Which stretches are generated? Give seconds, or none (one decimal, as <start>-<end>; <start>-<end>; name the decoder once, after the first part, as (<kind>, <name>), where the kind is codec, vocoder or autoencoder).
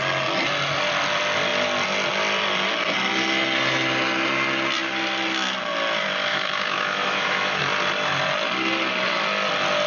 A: 6.3-7.6 (autoencoder, DAC-VAE)